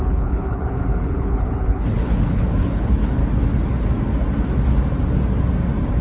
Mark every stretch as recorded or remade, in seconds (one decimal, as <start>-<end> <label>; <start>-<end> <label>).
0.0-3.2 remade; 3.2-6.0 recorded